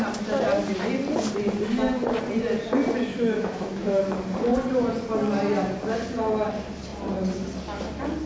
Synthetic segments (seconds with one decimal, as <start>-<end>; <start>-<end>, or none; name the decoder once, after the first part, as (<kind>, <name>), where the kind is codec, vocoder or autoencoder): 3.1-4.0 (autoencoder, DAC-VAE)

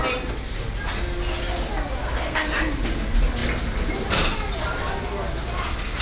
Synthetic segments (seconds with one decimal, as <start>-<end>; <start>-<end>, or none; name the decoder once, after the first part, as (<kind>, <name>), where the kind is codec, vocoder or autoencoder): 2.0-2.6 (codec, SNAC)

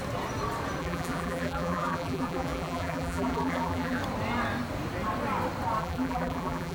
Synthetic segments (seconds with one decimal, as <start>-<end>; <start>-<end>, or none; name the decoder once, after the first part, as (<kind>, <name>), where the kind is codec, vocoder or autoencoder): 0.8-4.0 (vocoder, BigVGAN v2); 5.8-6.7

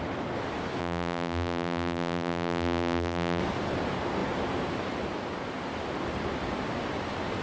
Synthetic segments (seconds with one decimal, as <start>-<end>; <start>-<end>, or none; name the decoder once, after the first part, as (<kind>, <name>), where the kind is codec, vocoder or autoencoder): 0.8-3.4 (vocoder, BigVGAN v2)

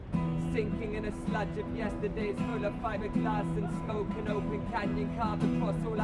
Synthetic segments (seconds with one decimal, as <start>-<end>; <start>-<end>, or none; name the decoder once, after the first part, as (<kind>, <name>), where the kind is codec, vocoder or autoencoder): 0.0-1.3 (vocoder, BigVGAN v2); 1.9-4.9; 5.4-6.0

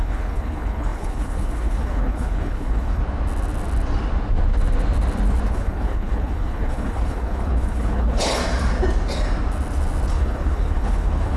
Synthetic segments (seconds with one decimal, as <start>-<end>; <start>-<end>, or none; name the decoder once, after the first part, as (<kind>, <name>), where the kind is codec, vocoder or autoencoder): 0.0-3.0 (codec, HILCodec); 5.5-8.4; 10.1-11.4

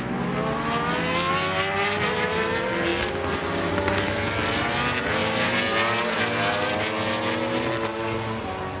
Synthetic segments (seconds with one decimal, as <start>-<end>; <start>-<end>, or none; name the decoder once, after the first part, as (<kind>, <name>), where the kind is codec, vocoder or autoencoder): none

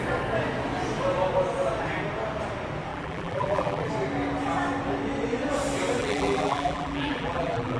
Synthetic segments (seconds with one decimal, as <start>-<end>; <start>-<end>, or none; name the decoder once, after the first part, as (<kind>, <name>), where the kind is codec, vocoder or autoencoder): 2.9-3.9 (vocoder, BigVGAN v2); 6.0-7.8